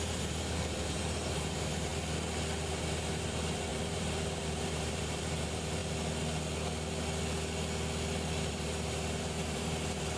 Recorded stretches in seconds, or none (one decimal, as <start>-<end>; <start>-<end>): 1.9-2.7; 5.8-8.5